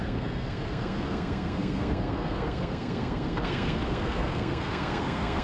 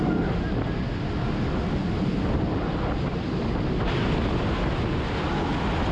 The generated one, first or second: first